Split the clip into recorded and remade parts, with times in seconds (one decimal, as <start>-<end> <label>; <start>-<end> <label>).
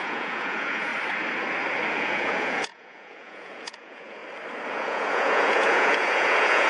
0.0-0.9 remade; 0.9-1.9 recorded; 1.9-4.2 remade; 4.2-4.8 recorded; 4.8-6.7 remade